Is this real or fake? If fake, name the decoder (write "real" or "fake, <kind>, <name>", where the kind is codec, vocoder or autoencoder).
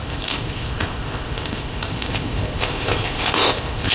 fake, codec, ZipCodec